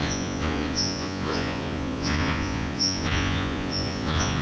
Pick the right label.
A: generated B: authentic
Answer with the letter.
A